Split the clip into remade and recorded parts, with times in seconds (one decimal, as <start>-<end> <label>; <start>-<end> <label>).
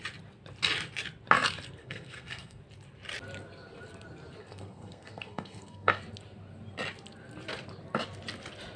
0.0-1.8 recorded; 1.8-2.6 remade; 2.6-4.4 recorded; 4.4-6.0 remade; 6.0-8.8 recorded